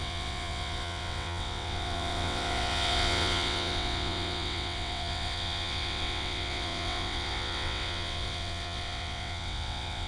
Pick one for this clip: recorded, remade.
remade